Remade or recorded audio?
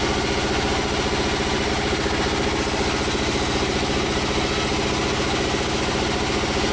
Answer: recorded